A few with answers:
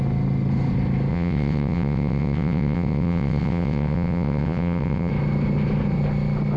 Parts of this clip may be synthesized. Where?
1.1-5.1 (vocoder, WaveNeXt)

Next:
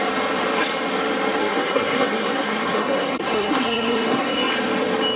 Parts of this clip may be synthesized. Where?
1.4-4.5 (codec, SNAC)

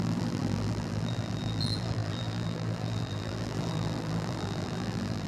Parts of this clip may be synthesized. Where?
0.0-5.3 (vocoder, BigVGAN v2)

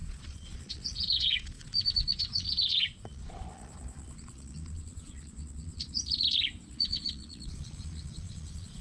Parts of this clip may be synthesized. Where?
0.0-6.0 (vocoder, Vocos); 6.7-8.8

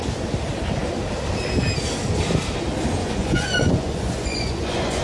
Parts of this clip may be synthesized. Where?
3.0-5.0 (vocoder, Vocos)

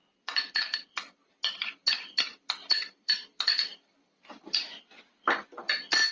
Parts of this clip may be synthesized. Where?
0.0-1.3 (vocoder, BigVGAN v2); 1.9-5.1

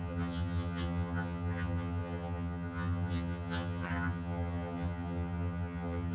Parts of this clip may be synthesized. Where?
0.0-6.1 (vocoder, HiFi-GAN)